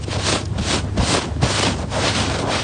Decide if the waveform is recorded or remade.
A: recorded